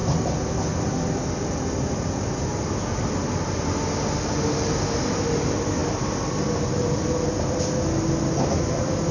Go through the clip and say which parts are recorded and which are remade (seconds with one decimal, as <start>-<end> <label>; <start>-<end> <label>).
0.0-9.1 recorded